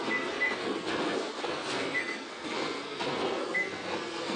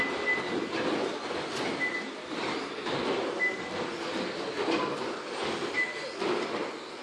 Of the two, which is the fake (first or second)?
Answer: first